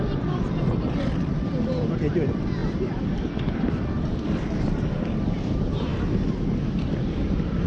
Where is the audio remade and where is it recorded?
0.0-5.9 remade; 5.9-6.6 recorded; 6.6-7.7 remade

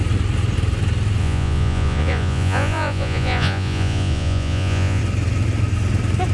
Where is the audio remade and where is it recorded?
0.0-1.2 recorded; 1.2-5.0 remade; 5.0-6.3 recorded

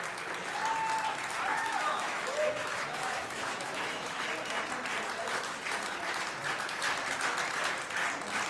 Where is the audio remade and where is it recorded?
0.0-1.5 recorded; 1.5-4.3 remade; 4.3-8.5 recorded

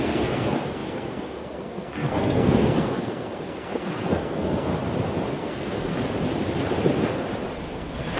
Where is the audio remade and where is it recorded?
0.0-4.7 remade; 4.7-5.3 recorded; 5.3-5.9 remade; 5.9-7.7 recorded; 7.7-8.2 remade

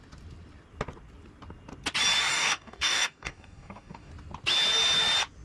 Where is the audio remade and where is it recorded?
0.0-2.3 recorded; 2.3-4.1 remade; 4.1-5.4 recorded

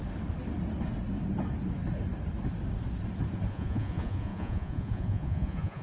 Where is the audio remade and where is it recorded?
0.0-3.5 recorded; 3.5-5.8 remade

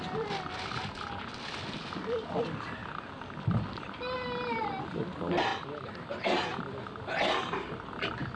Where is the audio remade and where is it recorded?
0.0-8.4 recorded